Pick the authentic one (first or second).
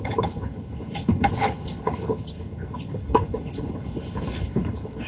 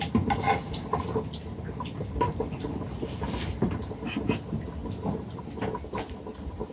second